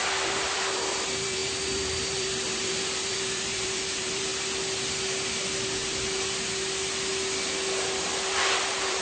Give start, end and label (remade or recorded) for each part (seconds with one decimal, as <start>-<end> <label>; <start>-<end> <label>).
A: 0.0-4.3 remade; 4.3-8.4 recorded; 8.4-9.0 remade